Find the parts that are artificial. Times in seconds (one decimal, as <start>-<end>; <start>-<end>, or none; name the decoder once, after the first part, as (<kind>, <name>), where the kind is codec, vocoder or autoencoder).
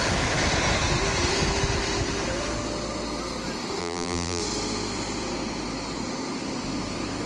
3.8-4.4 (vocoder, BigVGAN v2)